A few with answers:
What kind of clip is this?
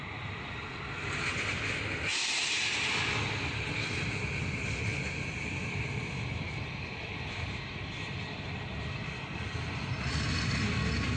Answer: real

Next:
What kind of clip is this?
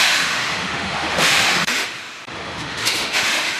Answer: fake